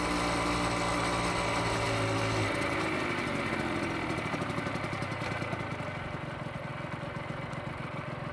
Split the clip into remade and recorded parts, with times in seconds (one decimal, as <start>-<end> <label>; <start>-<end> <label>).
0.0-8.3 recorded